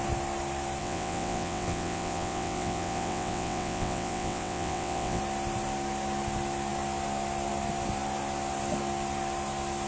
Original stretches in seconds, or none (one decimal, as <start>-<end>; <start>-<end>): 0.0-0.8; 5.2-9.9